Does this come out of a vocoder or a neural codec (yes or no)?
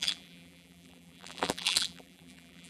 yes